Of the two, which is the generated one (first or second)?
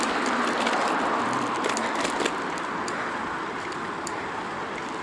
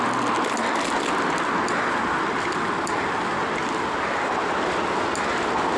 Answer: first